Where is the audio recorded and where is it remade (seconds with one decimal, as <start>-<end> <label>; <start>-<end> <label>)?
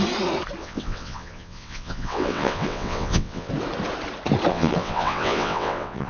0.0-0.6 recorded; 0.6-3.5 remade; 3.5-4.5 recorded; 4.5-6.1 remade